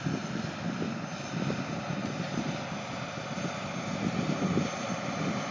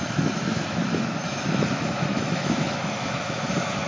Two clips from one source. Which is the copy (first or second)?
second